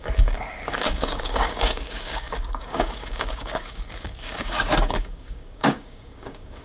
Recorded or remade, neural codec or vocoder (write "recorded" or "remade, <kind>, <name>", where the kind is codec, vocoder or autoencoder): remade, codec, DAC